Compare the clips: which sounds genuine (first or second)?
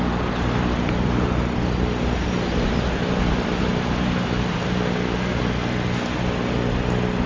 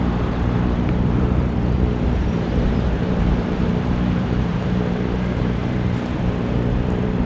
first